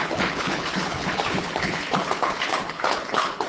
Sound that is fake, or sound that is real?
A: fake